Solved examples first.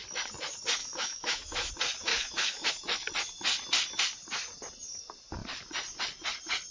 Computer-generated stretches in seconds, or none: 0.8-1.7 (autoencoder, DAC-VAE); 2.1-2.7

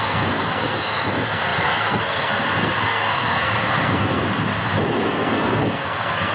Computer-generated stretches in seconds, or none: 0.0-4.2 (codec, SNAC); 5.1-6.3

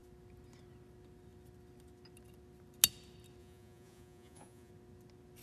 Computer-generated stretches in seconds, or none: 3.4-4.7 (vocoder, Vocos)

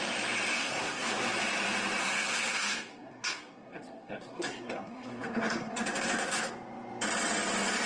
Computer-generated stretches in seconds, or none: 0.6-1.1 (codec, SNAC); 2.0-6.5

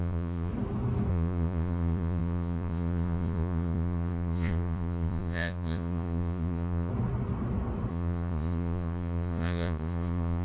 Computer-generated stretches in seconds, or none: 0.0-0.5 (vocoder, Vocos); 1.1-6.9; 7.9-10.4

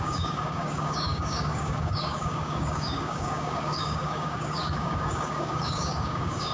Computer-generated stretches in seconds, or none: 0.0-6.5 (codec, DAC)

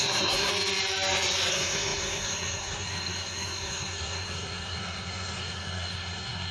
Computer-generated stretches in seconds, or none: 0.0-0.5 (codec, SNAC); 1.5-6.5

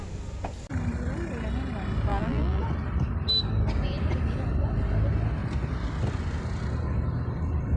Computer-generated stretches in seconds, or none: 2.1-2.6 (vocoder, BigVGAN v2)